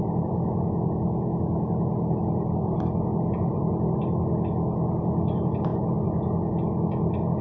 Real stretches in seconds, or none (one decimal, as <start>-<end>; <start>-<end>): 0.0-7.4